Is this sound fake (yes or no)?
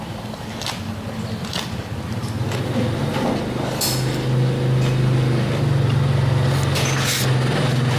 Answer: no